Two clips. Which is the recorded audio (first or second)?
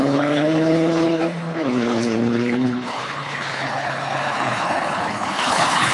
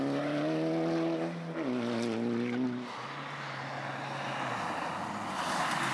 second